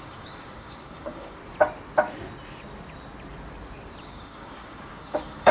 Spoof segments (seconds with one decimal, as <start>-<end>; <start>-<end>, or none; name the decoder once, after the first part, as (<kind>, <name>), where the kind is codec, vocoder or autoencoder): 0.0-1.4 (codec, DAC); 4.0-5.5